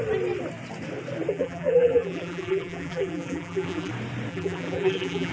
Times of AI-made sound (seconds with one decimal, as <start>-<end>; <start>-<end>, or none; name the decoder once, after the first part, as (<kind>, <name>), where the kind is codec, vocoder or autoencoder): 1.3-3.9 (vocoder, BigVGAN v2); 4.3-5.3